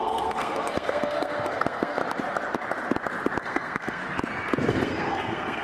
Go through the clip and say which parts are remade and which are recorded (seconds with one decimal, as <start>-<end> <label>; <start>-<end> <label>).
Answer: 0.0-2.0 remade; 2.0-3.4 recorded; 3.4-4.0 remade; 4.0-4.7 recorded; 4.7-5.6 remade